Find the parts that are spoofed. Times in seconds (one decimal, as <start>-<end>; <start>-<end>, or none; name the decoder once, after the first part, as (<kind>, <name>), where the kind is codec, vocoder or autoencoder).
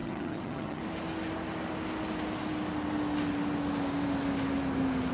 0.0-0.8 (vocoder, HiFi-GAN)